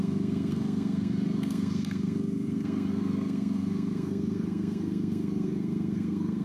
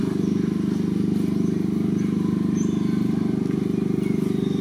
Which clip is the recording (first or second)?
second